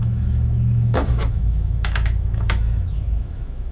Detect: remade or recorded remade